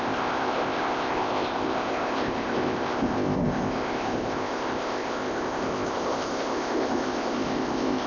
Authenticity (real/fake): fake